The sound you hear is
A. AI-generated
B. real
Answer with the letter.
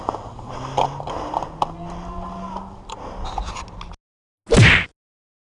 B